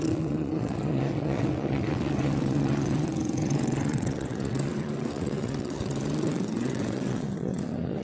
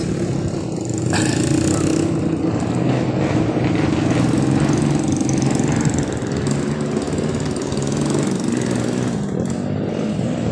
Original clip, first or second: second